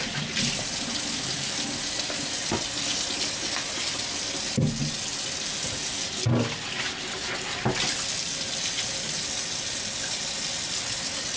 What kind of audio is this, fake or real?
real